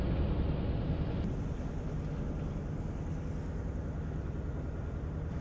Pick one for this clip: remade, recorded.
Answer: recorded